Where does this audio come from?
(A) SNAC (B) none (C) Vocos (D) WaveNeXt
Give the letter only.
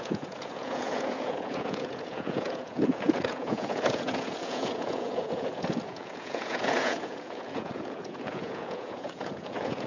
C